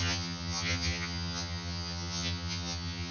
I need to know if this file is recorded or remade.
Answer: remade